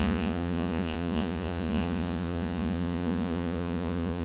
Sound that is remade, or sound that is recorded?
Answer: remade